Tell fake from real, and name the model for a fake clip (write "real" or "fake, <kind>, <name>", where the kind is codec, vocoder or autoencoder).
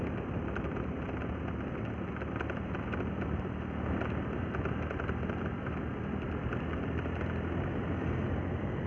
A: real